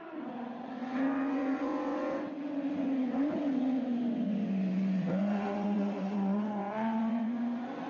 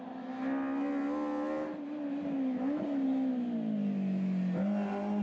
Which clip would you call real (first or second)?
second